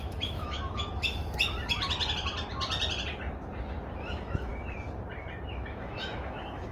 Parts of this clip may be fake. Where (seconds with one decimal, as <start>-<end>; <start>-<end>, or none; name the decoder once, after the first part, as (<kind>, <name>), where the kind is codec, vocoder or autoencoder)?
0.0-1.2 (autoencoder, DAC-VAE); 4.1-4.5; 5.5-6.7